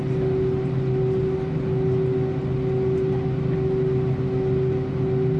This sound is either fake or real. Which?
real